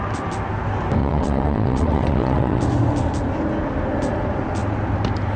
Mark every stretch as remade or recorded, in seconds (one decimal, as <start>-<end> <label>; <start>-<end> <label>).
0.0-1.0 recorded; 1.0-2.6 remade; 2.6-5.4 recorded